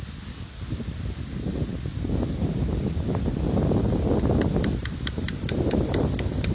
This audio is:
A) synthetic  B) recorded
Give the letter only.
B